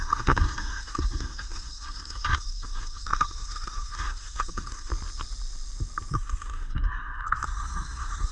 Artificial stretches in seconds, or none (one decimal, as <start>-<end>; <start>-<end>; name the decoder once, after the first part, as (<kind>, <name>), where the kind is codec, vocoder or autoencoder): 0.0-4.9 (codec, SNAC); 6.1-8.3